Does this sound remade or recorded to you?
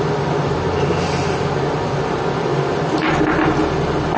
recorded